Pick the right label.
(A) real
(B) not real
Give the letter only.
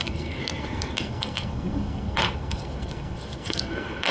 B